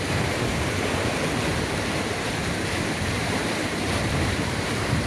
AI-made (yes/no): yes